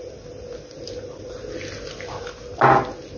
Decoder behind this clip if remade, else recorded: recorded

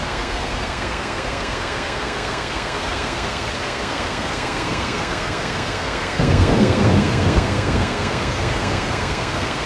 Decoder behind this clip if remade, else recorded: remade, codec, SNAC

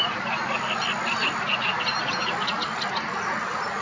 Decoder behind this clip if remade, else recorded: recorded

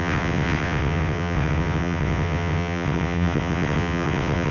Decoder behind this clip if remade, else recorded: remade, vocoder, WaveNeXt